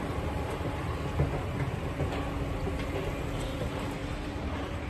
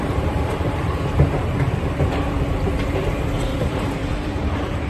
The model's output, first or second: second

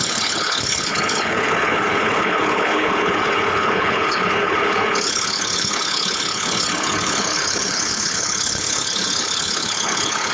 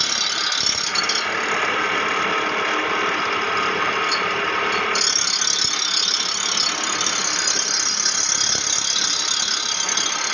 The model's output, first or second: first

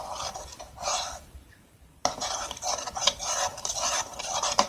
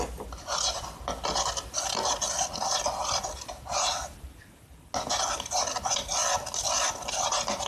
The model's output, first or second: first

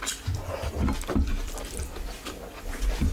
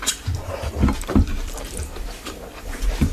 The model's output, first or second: second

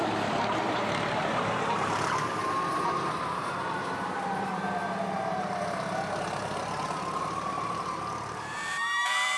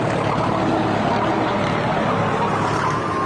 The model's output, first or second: first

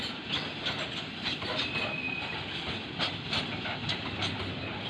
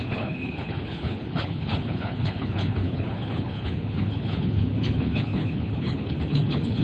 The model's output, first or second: second